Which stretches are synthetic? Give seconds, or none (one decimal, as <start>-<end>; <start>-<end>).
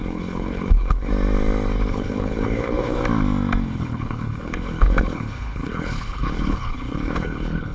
0.0-1.1; 1.9-3.0; 3.6-7.7